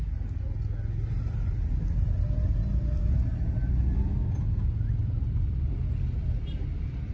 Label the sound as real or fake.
real